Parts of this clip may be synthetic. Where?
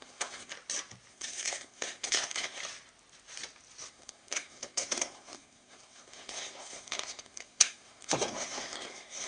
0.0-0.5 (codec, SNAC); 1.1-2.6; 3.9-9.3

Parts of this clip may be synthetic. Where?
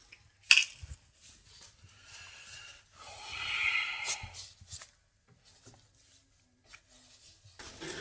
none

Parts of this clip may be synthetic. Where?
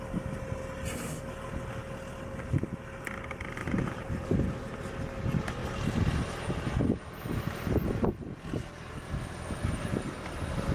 3.6-4.3 (vocoder, BigVGAN v2)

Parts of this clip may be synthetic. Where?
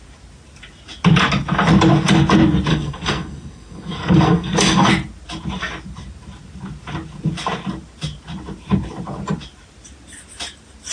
2.7-4.9 (codec, SNAC)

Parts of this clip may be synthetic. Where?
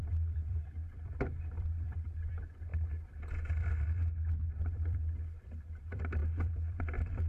0.0-2.7 (vocoder, BigVGAN v2); 4.5-7.3